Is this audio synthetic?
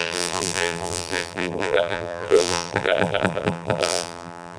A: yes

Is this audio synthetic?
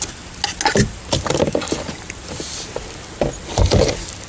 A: no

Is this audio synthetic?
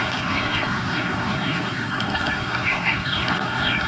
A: yes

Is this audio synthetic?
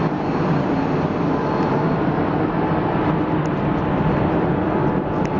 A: no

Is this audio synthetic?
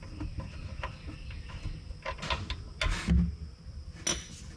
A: no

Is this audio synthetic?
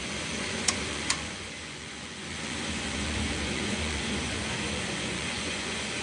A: yes